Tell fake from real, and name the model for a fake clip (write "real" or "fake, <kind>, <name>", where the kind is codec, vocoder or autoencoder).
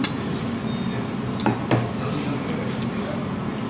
real